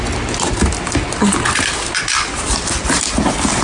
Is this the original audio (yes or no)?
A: yes